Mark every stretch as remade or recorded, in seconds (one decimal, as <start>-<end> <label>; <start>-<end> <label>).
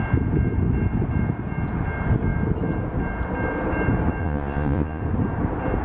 0.0-4.2 recorded; 4.2-5.0 remade; 5.0-5.8 recorded